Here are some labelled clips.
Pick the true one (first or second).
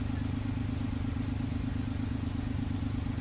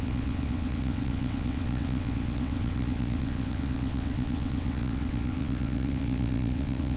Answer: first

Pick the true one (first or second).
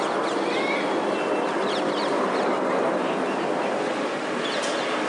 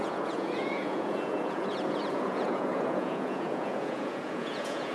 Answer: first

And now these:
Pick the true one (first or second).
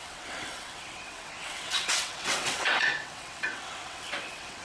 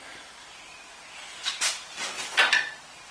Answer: second